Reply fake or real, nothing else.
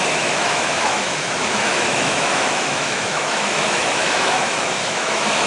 fake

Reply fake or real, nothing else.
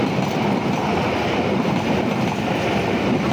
real